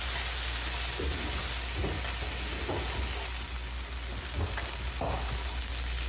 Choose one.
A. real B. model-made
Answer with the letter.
A